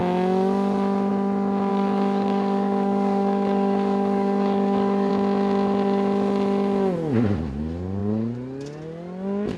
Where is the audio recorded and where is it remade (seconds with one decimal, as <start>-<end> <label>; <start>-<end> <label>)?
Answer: 0.0-1.7 recorded; 1.7-5.1 remade; 5.1-9.6 recorded